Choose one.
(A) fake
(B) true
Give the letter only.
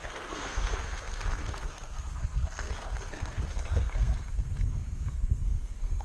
A